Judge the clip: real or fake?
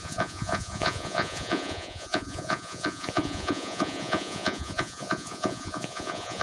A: fake